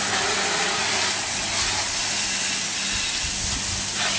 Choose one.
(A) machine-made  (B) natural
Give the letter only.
B